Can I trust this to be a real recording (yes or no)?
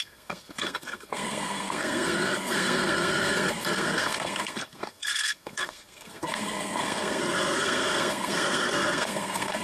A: no